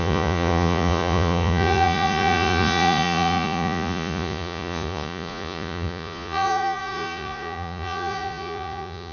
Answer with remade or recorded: remade